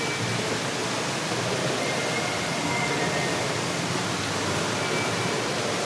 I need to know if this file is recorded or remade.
recorded